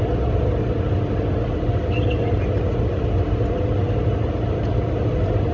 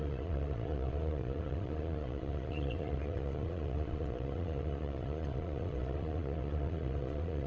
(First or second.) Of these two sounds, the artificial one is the second